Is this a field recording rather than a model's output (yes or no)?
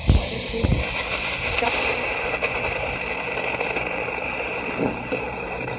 yes